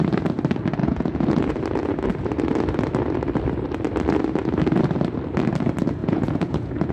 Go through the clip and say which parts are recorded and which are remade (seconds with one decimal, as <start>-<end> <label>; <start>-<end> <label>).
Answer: 0.0-0.8 recorded; 0.8-1.5 remade; 1.5-6.0 recorded; 6.0-6.9 remade